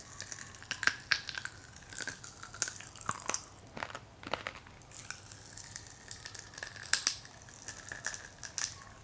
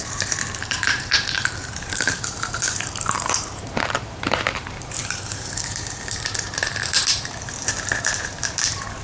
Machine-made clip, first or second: second